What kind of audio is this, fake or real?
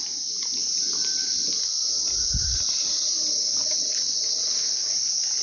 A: real